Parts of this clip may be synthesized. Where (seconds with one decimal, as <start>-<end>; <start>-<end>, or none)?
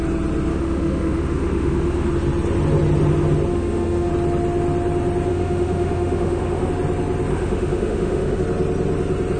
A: 0.5-2.1; 3.5-4.1; 5.3-6.7; 7.3-8.4